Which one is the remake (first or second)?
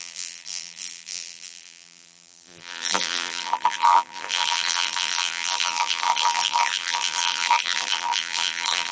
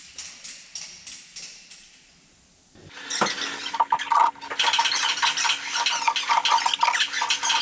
first